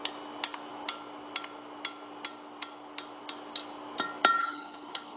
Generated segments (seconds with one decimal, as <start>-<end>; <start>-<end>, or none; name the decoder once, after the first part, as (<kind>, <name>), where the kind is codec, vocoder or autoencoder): 4.4-5.2 (codec, HILCodec)